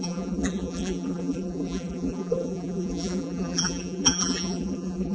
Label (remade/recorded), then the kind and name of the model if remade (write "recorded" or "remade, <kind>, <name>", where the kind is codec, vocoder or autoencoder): remade, vocoder, BigVGAN v2